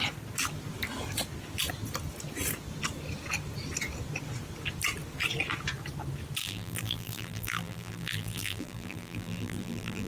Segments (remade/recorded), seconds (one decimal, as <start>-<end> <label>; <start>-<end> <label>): 0.0-6.4 recorded; 6.4-10.1 remade